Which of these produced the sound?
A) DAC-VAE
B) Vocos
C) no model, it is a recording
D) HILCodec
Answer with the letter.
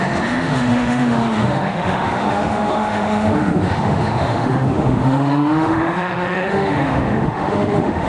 A